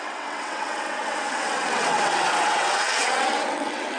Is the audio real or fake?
fake